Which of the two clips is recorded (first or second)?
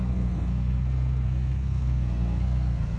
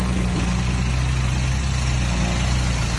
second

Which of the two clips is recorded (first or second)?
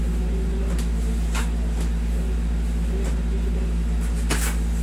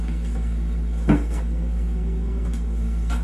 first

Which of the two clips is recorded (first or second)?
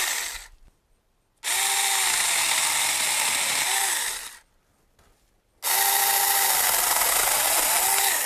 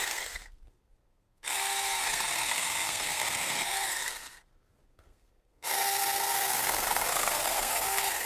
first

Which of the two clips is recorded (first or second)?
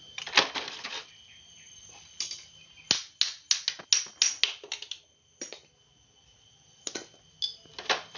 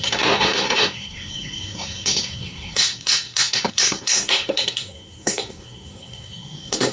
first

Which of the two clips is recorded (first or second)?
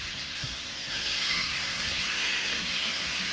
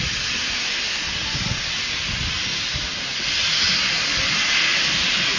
second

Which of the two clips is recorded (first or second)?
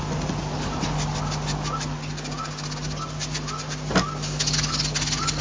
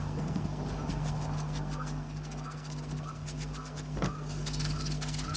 first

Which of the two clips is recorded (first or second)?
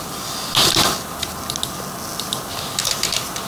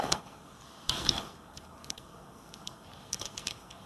first